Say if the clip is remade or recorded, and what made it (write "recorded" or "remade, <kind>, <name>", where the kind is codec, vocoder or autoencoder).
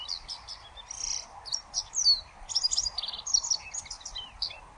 recorded